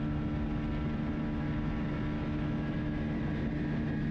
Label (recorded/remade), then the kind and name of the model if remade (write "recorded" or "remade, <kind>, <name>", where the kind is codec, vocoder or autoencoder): recorded